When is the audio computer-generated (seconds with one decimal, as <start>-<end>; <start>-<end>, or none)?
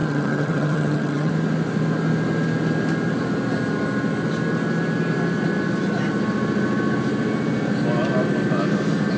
0.0-1.3